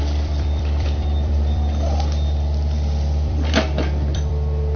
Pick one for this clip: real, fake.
fake